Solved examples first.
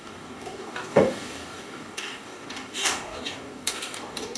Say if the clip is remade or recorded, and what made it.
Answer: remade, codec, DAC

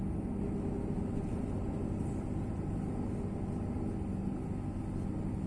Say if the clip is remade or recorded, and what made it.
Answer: recorded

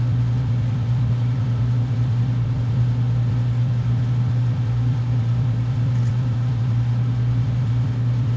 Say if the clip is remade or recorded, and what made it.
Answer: remade, vocoder, BigVGAN v2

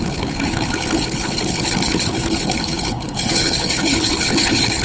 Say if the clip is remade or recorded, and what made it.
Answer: remade, codec, HILCodec